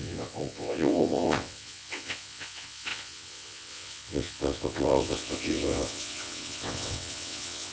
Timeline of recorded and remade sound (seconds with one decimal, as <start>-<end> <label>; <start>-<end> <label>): 0.0-7.7 remade